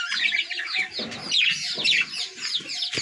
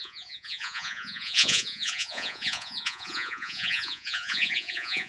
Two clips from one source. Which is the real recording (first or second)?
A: first